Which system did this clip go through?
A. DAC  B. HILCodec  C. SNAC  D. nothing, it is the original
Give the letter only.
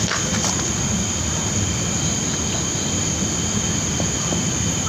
D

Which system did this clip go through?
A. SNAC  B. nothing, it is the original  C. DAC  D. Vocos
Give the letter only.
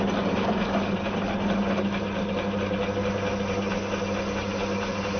B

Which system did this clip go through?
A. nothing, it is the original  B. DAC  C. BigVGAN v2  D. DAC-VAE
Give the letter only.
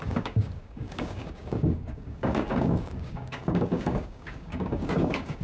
B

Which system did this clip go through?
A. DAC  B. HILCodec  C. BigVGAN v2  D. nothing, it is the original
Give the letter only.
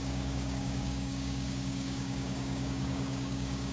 A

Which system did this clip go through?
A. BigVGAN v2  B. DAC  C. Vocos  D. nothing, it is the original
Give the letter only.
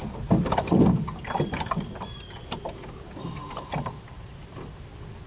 D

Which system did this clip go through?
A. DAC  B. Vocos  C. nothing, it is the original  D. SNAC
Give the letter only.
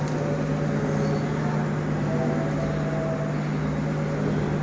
C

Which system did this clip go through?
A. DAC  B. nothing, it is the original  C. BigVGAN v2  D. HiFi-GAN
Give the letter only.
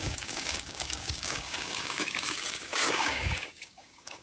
A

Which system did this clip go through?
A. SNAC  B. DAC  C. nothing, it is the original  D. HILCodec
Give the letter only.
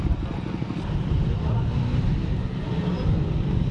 C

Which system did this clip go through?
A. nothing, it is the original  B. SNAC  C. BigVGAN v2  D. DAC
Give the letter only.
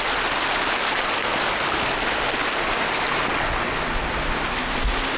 A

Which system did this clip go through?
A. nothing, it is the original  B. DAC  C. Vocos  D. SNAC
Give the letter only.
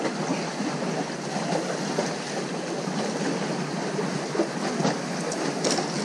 A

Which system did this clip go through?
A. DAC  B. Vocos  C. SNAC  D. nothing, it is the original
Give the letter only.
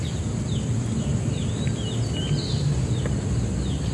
D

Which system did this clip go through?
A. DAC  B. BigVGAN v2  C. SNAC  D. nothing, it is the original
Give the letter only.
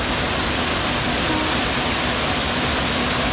D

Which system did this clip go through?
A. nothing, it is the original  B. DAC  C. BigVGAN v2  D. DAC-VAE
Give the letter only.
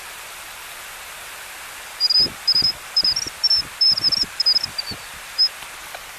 A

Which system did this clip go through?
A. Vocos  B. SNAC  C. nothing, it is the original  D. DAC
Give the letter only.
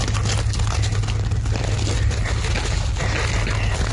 C